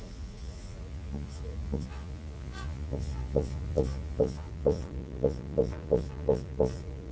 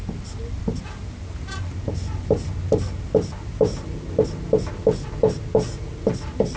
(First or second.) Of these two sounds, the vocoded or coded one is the first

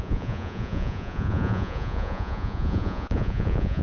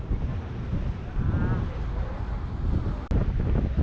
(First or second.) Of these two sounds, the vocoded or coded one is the first